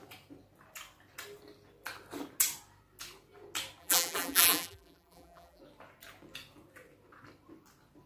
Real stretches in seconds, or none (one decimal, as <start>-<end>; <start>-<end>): 0.0-3.8; 5.6-8.1